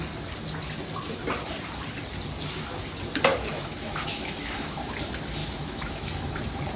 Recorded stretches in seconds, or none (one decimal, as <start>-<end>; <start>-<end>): 0.0-3.3; 4.9-5.4; 6.3-6.8